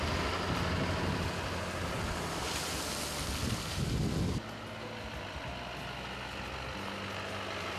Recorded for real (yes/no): yes